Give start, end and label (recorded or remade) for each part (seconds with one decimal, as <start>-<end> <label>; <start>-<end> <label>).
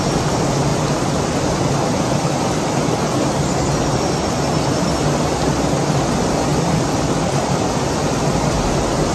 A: 0.0-6.5 recorded; 6.5-8.5 remade; 8.5-9.1 recorded